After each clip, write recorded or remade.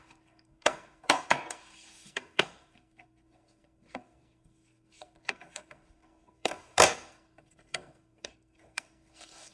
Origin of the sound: remade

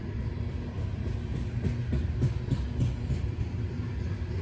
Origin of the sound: recorded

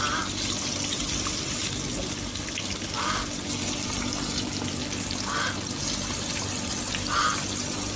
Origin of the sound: recorded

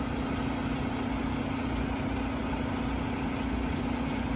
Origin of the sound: recorded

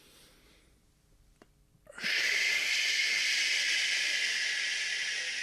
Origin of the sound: recorded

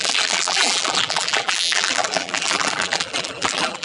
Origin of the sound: remade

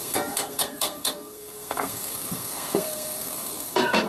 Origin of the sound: remade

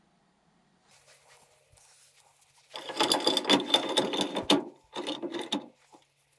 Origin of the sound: recorded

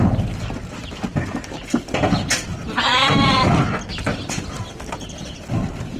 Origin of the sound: recorded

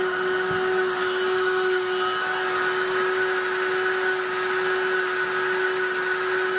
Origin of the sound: recorded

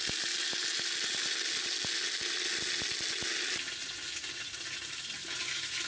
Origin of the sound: recorded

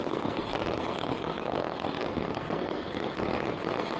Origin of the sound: remade